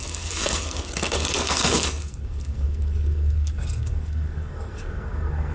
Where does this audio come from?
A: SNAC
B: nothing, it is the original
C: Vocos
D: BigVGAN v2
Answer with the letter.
A